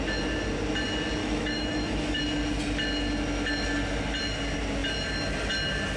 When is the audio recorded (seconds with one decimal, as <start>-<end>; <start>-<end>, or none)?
0.0-1.2; 2.2-6.0

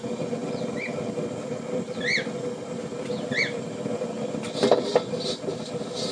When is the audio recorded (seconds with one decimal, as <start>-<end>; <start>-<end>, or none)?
0.0-6.1

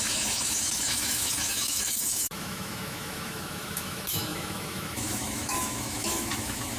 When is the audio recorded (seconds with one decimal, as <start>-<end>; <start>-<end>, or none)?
none

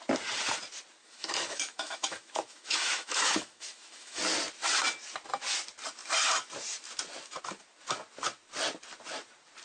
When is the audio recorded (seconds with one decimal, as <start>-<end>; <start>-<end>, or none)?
0.0-1.0; 4.2-9.6